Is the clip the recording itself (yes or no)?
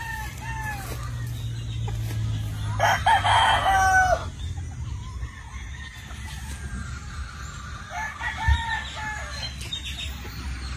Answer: yes